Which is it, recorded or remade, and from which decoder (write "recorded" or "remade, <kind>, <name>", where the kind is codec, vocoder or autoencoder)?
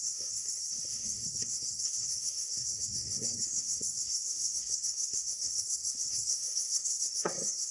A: remade, codec, SNAC